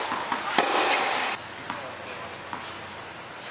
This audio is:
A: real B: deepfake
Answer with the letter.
A